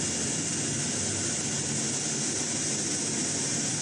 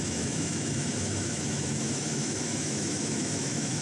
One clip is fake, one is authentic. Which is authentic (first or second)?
first